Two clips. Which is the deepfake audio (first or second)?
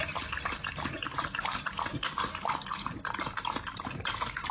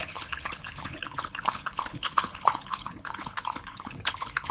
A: second